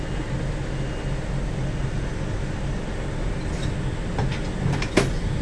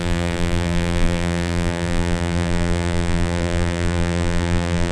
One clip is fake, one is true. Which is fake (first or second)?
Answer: second